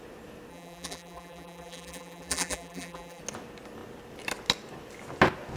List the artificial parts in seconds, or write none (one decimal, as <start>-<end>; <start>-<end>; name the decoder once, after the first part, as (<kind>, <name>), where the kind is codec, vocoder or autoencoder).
0.5-3.2 (vocoder, BigVGAN v2)